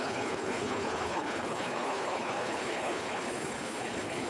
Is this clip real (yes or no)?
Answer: no